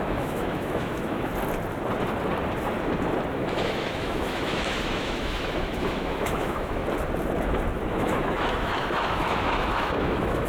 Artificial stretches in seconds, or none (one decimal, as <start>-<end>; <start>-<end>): 0.0-1.3; 3.3-6.8; 7.9-10.5

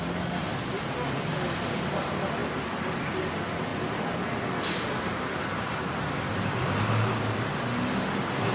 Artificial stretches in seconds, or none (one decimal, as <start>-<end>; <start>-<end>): 7.5-8.1

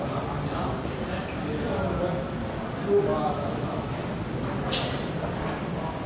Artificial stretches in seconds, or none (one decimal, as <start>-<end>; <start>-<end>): 3.1-3.9

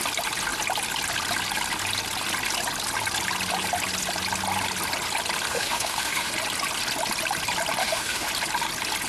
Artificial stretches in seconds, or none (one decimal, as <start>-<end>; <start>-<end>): 5.5-6.3; 7.8-8.3

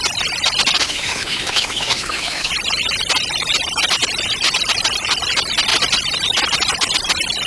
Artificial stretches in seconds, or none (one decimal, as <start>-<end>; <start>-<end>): 0.8-2.5

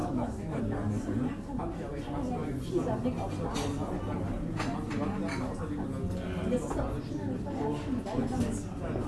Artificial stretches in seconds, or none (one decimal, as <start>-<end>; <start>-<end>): 0.0-0.6

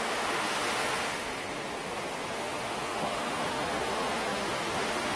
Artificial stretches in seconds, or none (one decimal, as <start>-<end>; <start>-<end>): 0.0-1.3; 2.3-5.2